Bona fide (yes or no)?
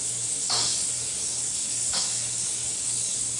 no